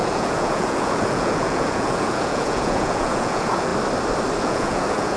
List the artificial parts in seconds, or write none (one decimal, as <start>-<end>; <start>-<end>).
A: 0.0-3.7; 4.4-5.2